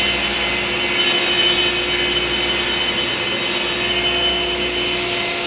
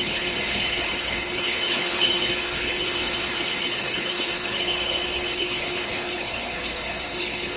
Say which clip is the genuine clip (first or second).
first